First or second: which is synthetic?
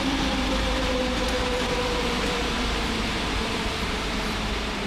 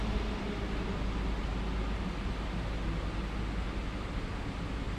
first